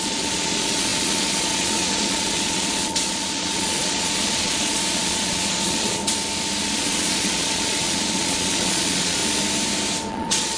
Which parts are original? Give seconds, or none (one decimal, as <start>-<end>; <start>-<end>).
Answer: 6.0-6.6; 9.2-10.1